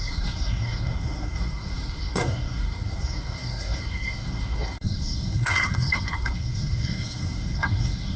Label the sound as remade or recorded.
remade